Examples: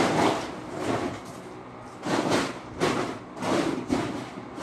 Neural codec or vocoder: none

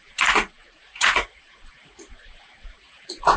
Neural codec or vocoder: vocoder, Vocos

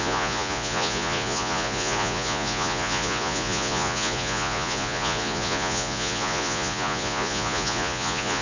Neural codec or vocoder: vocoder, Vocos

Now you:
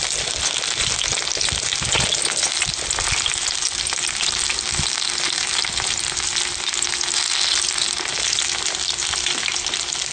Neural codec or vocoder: none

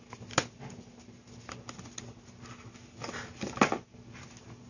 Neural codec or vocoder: none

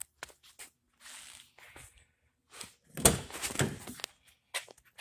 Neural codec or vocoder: none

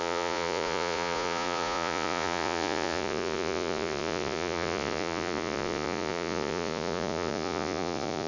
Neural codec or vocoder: vocoder, Vocos